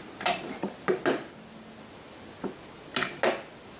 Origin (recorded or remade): recorded